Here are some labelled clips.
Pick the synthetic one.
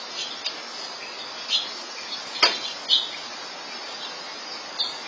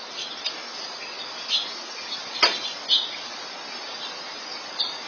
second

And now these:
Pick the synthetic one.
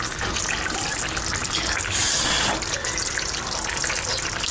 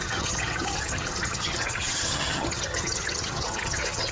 second